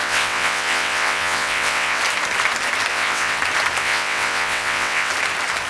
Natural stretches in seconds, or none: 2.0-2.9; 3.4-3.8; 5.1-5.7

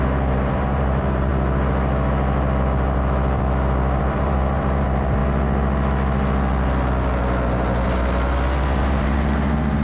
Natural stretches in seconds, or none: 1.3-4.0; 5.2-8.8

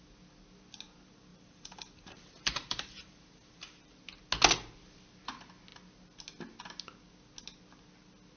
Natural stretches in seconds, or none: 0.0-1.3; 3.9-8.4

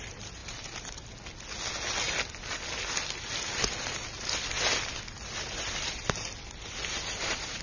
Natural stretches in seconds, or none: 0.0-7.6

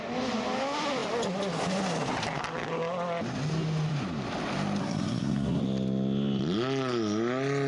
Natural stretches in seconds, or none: 0.0-4.8; 5.6-7.7